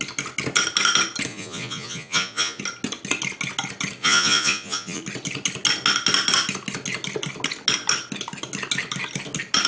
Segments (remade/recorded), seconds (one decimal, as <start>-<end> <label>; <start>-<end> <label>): 0.0-1.3 recorded; 1.3-2.6 remade; 2.6-4.0 recorded; 4.0-5.0 remade; 5.0-9.7 recorded